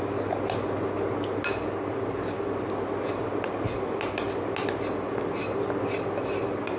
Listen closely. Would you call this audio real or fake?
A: real